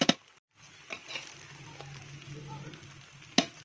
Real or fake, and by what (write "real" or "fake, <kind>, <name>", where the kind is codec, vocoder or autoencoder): real